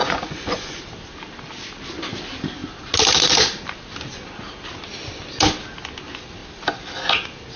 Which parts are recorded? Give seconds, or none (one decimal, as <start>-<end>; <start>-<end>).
0.8-7.6